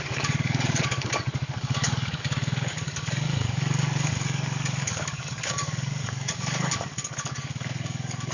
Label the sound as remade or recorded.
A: remade